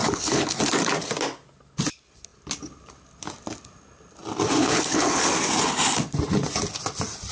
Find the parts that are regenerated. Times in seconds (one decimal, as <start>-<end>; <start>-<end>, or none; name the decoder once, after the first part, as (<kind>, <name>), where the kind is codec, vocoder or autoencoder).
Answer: 0.0-0.6 (codec, HILCodec); 4.6-5.2